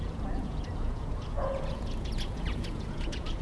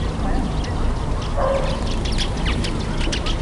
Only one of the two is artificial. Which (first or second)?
first